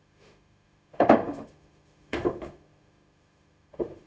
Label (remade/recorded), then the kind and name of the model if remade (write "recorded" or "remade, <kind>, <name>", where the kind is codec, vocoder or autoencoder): remade, autoencoder, DAC-VAE